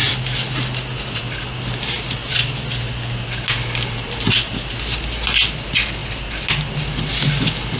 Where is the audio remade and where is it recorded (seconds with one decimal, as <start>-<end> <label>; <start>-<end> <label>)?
0.0-7.8 recorded